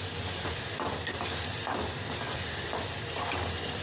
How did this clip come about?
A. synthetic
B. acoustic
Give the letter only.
A